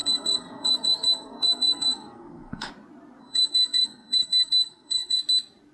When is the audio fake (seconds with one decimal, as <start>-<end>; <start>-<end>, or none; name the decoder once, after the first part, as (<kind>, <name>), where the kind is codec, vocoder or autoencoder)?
0.0-2.7 (codec, SNAC); 3.2-5.2